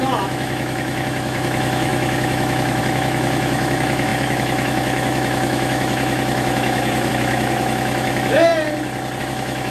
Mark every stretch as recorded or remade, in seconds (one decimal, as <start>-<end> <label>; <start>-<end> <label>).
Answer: 0.0-8.5 remade; 8.5-9.2 recorded; 9.2-9.7 remade

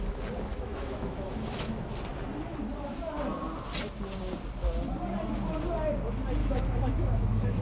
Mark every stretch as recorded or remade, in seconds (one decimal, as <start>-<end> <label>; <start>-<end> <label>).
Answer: 0.0-0.5 recorded; 0.5-1.7 remade; 1.7-6.4 recorded; 6.4-7.6 remade

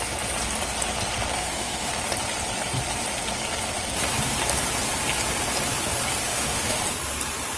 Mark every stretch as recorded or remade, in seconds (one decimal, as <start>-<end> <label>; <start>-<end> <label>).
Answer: 0.0-1.4 recorded; 1.4-1.9 remade; 1.9-6.3 recorded; 6.3-6.8 remade; 6.8-7.6 recorded

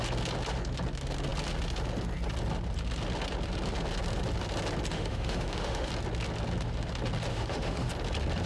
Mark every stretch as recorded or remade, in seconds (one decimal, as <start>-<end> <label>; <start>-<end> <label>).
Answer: 0.0-4.9 recorded; 4.9-5.9 remade; 5.9-7.3 recorded; 7.3-7.9 remade; 7.9-8.5 recorded

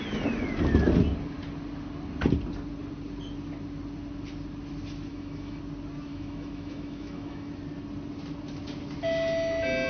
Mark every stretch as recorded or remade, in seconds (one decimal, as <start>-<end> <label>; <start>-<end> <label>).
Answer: 0.0-5.1 recorded; 5.1-5.6 remade; 5.6-6.1 recorded; 6.1-7.5 remade; 7.5-9.9 recorded